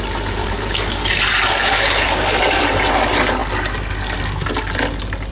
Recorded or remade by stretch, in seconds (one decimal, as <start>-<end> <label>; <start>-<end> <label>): 0.0-0.4 recorded; 0.4-1.2 remade; 1.2-1.6 recorded; 1.6-2.6 remade; 2.6-5.3 recorded